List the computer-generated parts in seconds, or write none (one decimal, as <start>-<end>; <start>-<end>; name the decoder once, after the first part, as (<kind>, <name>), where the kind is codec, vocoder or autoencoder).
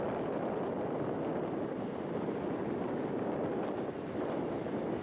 none